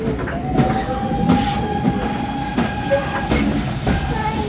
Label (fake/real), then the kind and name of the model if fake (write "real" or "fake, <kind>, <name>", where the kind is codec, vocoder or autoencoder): real